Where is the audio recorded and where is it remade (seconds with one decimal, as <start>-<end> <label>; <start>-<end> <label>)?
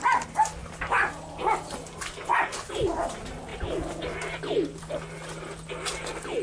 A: 0.0-6.4 recorded